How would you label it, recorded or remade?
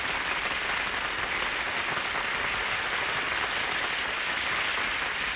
recorded